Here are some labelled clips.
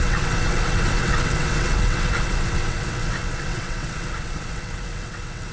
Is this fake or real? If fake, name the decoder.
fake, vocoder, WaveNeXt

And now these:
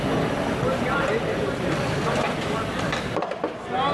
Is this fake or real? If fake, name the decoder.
real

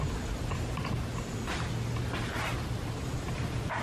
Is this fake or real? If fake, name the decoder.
real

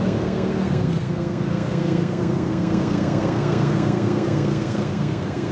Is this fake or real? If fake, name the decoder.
fake, codec, SNAC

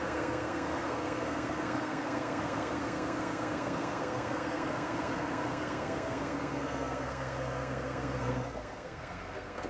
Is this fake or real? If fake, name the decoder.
fake, codec, SNAC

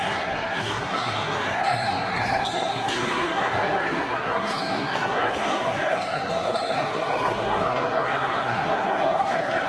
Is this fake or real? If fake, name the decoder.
fake, codec, SNAC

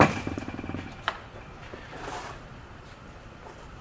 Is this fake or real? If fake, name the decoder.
fake, vocoder, BigVGAN v2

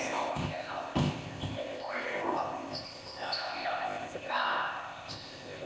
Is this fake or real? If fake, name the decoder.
fake, codec, ZipCodec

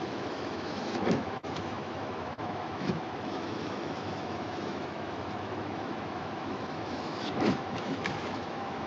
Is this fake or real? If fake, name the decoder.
fake, autoencoder, DAC-VAE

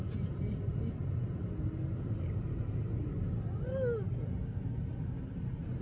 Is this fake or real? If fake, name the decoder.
real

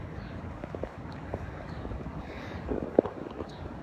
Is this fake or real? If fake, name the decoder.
fake, codec, DAC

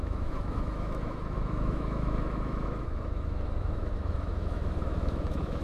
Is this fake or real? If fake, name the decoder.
fake, autoencoder, DAC-VAE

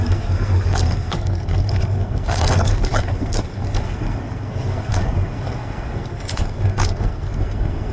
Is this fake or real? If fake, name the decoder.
fake, codec, SNAC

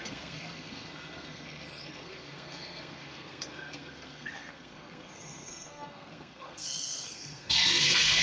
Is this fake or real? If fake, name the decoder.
fake, codec, SNAC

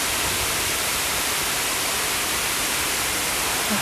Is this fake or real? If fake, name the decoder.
fake, vocoder, BigVGAN v2